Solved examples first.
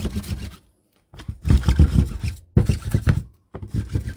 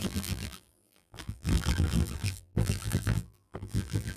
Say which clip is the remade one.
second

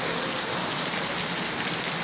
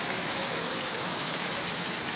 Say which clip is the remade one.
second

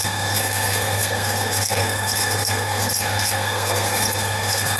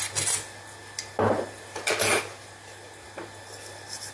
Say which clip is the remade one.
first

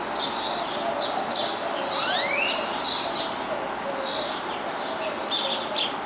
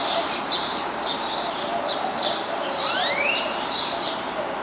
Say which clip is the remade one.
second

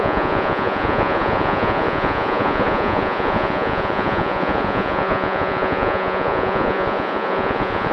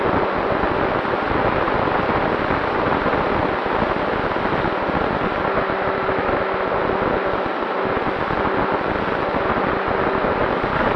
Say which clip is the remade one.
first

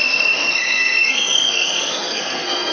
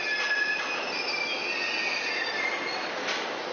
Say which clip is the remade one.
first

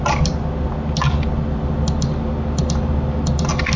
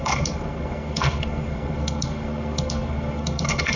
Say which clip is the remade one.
second